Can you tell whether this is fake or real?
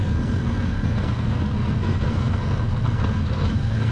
fake